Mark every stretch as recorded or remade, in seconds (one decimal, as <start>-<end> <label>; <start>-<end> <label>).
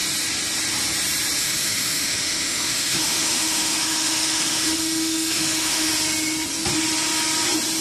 0.0-1.4 recorded; 1.4-5.9 remade; 5.9-7.8 recorded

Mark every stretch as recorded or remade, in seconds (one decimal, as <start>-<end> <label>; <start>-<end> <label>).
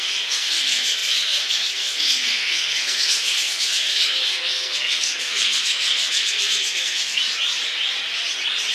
0.0-7.2 remade; 7.2-8.7 recorded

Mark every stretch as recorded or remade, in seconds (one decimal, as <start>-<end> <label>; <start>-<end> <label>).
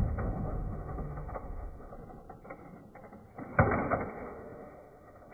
0.0-1.9 remade; 1.9-4.1 recorded; 4.1-5.3 remade